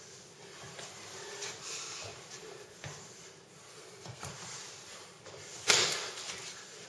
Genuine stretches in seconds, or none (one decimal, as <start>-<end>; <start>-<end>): 0.0-3.7; 4.3-6.9